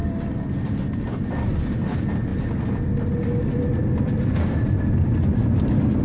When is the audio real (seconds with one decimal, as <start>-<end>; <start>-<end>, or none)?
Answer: 0.0-6.0